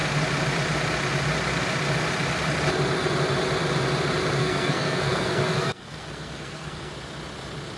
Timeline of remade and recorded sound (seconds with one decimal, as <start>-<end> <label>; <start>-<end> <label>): 0.0-4.4 recorded; 4.4-6.9 remade; 6.9-7.8 recorded